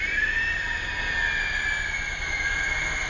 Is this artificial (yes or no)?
no